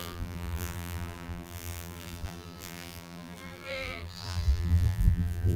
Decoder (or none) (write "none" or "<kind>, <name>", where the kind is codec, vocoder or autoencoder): vocoder, BigVGAN v2